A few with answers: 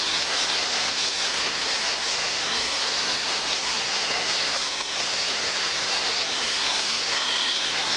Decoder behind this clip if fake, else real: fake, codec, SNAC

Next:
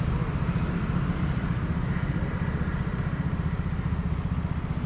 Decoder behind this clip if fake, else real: real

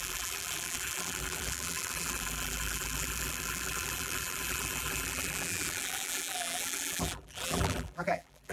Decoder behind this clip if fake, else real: fake, vocoder, BigVGAN v2